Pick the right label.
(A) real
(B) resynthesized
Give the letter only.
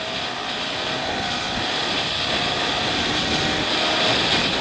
A